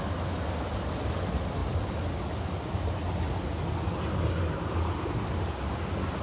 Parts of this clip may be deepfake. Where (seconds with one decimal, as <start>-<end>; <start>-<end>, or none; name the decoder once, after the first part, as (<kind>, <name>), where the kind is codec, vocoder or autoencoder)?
none